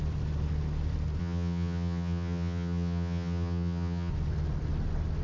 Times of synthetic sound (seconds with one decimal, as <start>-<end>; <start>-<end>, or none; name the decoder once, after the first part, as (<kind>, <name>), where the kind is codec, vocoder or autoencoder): 1.2-4.1 (vocoder, HiFi-GAN)